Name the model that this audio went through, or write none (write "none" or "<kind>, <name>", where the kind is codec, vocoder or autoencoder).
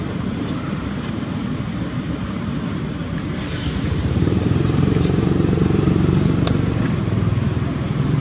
vocoder, BigVGAN v2